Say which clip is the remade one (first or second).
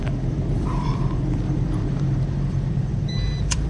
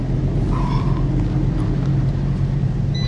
first